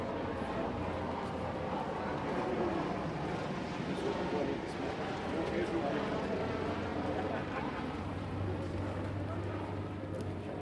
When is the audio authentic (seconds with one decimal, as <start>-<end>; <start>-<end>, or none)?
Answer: 0.0-6.9; 8.8-10.6